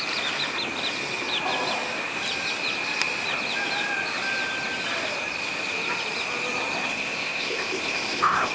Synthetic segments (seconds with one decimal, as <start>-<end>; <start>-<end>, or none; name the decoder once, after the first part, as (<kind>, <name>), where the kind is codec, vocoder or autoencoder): 6.9-8.5 (codec, ZipCodec)